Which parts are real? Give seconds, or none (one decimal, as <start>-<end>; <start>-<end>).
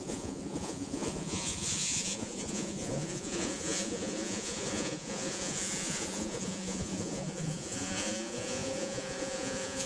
none